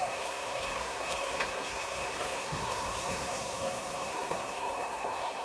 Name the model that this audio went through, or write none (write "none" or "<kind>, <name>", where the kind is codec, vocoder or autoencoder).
codec, SNAC